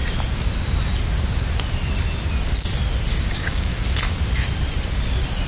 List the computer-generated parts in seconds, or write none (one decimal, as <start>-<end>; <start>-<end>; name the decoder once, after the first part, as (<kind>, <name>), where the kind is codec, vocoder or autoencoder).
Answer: 3.3-3.7 (codec, DAC)